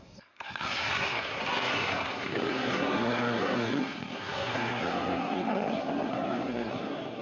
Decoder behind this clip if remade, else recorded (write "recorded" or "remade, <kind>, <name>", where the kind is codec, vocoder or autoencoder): remade, codec, SNAC